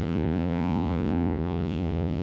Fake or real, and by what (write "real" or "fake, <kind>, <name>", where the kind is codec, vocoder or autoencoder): fake, vocoder, Vocos